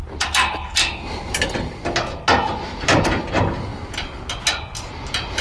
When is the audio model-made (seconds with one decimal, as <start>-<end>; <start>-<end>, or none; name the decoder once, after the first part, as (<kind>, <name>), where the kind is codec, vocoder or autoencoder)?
none

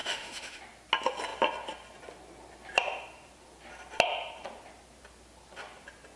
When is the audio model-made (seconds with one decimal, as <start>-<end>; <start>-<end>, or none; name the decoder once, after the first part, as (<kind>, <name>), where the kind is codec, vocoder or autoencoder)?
0.0-0.6 (autoencoder, DAC-VAE)

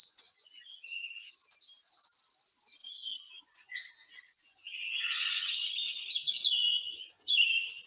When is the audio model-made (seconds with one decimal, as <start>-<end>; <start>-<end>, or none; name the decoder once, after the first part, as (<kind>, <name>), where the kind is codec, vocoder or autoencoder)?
0.0-1.3 (vocoder, Vocos); 3.0-7.3